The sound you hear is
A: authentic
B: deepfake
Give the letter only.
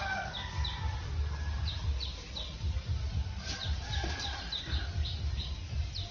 A